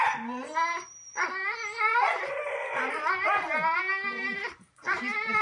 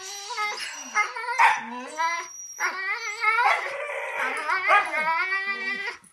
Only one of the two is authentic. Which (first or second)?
second